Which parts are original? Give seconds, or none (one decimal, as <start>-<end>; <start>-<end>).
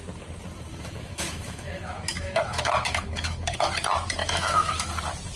0.0-0.7; 3.7-4.2; 4.9-5.4